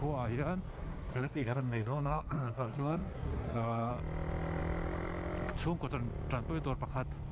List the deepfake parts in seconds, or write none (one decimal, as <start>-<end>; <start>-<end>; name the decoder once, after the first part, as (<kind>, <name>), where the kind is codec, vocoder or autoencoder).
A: 0.7-3.9 (codec, SNAC)